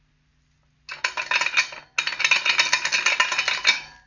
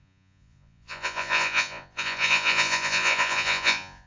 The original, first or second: first